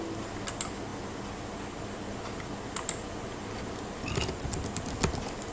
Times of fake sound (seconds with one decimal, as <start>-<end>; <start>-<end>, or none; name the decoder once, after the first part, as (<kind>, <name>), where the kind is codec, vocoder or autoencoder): none